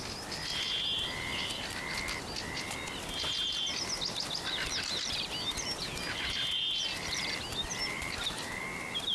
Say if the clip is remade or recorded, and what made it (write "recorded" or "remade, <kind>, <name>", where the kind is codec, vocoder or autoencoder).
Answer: recorded